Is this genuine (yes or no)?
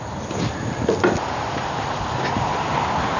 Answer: yes